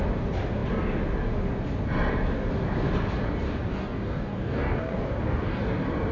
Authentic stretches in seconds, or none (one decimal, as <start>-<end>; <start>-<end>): 0.0-3.7; 5.6-6.1